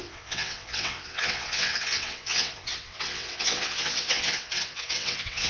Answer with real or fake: fake